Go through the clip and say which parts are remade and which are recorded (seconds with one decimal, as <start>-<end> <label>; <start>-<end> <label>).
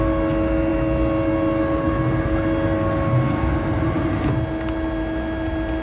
0.0-5.8 recorded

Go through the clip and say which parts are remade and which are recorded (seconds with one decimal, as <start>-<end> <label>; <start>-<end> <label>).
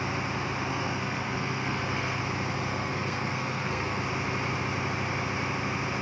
0.0-0.7 recorded; 0.7-2.2 remade; 2.2-2.7 recorded; 2.7-4.0 remade; 4.0-6.0 recorded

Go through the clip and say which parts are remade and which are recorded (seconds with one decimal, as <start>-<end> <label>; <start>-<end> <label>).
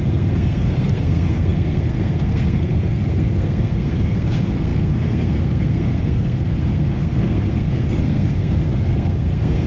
0.0-9.7 remade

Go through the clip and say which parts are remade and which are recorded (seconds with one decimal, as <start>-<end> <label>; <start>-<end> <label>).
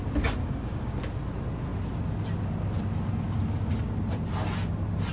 0.0-0.4 recorded; 0.4-1.0 remade; 1.0-5.1 recorded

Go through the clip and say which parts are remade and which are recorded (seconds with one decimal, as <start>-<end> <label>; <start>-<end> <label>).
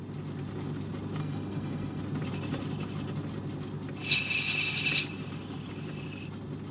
0.0-1.2 recorded; 1.2-2.0 remade; 2.0-6.7 recorded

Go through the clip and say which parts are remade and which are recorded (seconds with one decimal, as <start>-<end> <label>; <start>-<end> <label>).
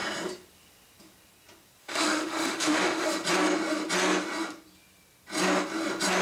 0.0-1.8 recorded; 1.8-3.1 remade; 3.1-6.2 recorded